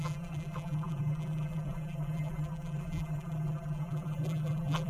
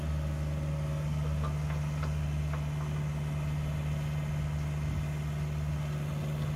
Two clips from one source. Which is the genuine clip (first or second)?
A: second